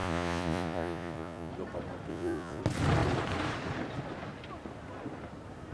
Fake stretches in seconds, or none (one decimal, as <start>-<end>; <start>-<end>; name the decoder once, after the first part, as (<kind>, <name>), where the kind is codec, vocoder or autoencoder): 0.0-1.5 (vocoder, Vocos); 2.1-2.6